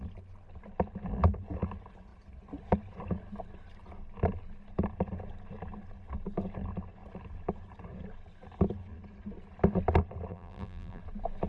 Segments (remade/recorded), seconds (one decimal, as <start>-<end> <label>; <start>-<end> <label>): 0.0-10.3 recorded; 10.3-11.0 remade; 11.0-11.5 recorded